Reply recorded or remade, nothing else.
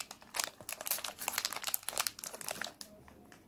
recorded